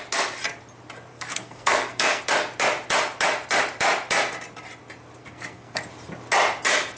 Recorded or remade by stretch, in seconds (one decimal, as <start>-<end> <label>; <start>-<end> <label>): 0.0-1.1 recorded; 1.1-2.2 remade; 2.2-5.2 recorded; 5.2-5.8 remade; 5.8-7.0 recorded